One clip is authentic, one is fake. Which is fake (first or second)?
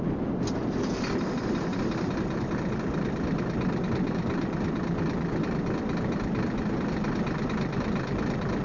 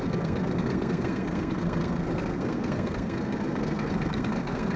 second